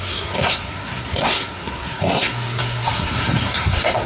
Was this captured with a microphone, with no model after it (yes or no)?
no